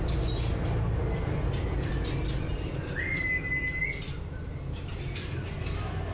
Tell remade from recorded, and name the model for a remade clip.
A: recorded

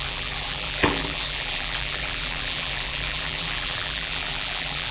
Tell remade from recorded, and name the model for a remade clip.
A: remade, vocoder, BigVGAN v2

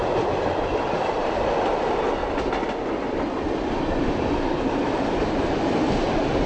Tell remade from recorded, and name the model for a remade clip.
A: recorded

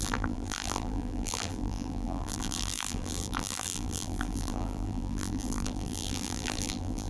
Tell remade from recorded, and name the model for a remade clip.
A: remade, vocoder, BigVGAN v2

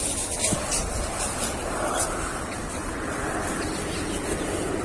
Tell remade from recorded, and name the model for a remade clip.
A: recorded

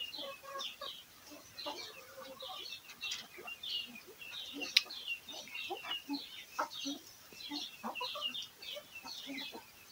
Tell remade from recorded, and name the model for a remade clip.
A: recorded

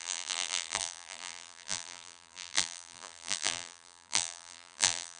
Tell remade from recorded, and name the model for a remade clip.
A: remade, vocoder, BigVGAN v2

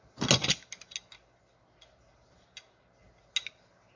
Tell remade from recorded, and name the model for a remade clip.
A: recorded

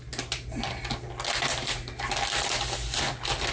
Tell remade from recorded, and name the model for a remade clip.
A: recorded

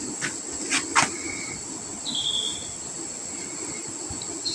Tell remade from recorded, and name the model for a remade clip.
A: recorded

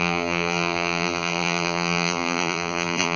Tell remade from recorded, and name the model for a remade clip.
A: remade, vocoder, BigVGAN v2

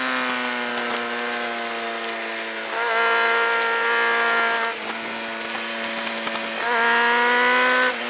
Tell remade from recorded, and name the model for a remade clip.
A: recorded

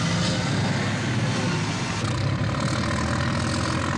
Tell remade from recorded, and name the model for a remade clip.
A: recorded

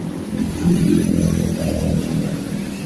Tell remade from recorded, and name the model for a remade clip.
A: remade, vocoder, BigVGAN v2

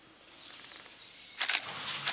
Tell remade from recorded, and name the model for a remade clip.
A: recorded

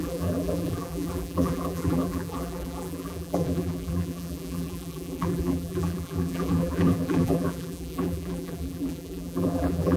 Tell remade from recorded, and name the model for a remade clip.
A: remade, vocoder, BigVGAN v2